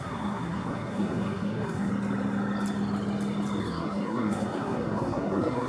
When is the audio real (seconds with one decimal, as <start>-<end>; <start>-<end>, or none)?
1.9-3.6